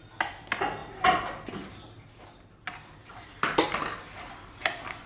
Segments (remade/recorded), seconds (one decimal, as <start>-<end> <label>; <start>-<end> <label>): 0.0-5.1 recorded